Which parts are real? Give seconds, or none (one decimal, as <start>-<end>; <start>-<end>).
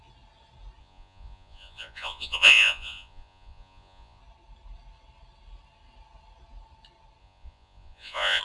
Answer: 0.0-0.8; 4.2-7.2